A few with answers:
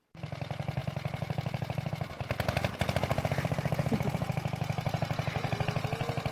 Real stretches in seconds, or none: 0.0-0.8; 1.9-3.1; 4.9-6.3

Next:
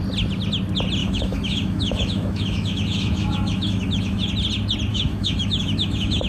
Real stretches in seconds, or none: 0.0-1.0; 4.3-4.9

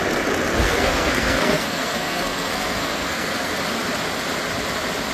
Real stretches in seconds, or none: 0.0-0.5; 3.5-5.1

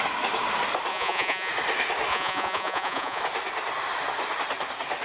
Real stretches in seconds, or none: 0.0-0.9; 1.5-2.1; 3.2-5.0

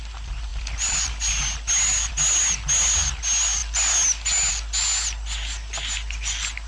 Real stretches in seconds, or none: 0.0-6.7

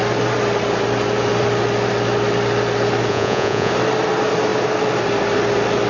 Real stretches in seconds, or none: 0.0-3.1; 3.7-5.9

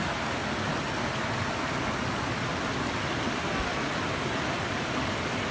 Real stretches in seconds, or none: 0.0-5.5